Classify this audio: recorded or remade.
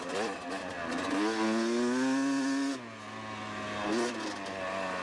recorded